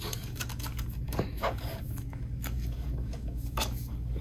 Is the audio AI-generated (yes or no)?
yes